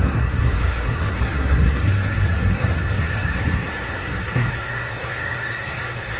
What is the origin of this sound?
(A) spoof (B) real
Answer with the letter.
A